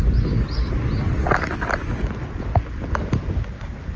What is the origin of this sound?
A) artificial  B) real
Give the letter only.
B